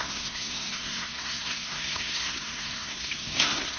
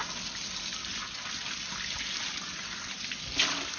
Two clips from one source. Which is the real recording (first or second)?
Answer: second